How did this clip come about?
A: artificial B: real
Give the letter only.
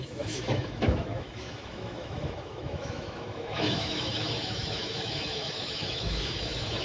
A